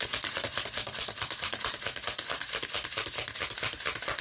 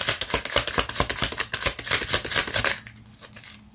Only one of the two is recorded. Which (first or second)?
second